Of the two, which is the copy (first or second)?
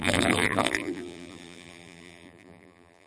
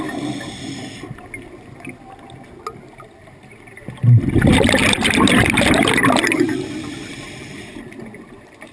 first